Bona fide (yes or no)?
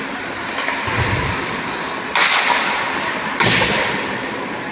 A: yes